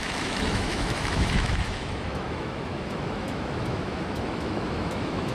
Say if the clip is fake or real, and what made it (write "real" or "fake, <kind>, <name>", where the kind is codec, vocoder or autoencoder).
fake, autoencoder, DAC-VAE